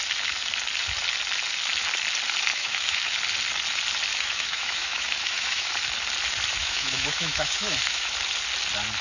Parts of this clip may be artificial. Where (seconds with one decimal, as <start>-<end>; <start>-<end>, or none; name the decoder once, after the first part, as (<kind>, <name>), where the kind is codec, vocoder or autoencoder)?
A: 2.5-3.1 (autoencoder, DAC-VAE); 4.1-5.7; 6.6-8.1